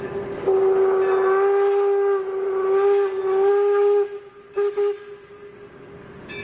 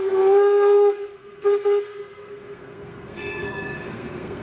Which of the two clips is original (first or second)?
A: first